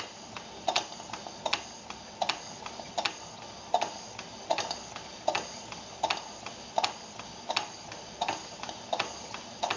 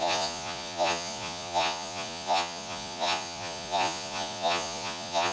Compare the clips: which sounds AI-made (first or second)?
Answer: second